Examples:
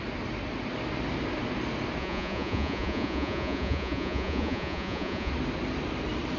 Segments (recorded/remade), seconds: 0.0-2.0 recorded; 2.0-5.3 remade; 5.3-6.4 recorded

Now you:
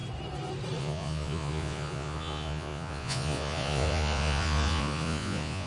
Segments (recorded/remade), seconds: 0.0-0.8 recorded; 0.8-5.7 remade

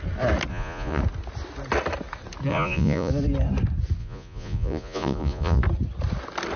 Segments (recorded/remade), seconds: 0.0-0.5 recorded; 0.5-1.0 remade; 1.0-2.5 recorded; 2.5-3.1 remade; 3.1-4.0 recorded; 4.0-5.6 remade; 5.6-6.6 recorded

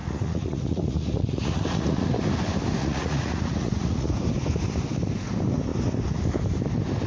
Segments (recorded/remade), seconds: 0.0-2.2 remade; 2.2-2.8 recorded; 2.8-4.1 remade; 4.1-7.1 recorded

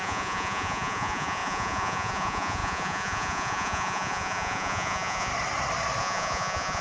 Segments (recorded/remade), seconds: 0.0-5.3 remade; 5.3-6.0 recorded; 6.0-6.8 remade

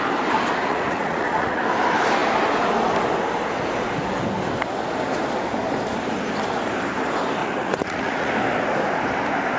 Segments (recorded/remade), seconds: 0.0-0.6 recorded; 0.6-1.6 remade; 1.6-7.4 recorded; 7.4-8.3 remade; 8.3-9.6 recorded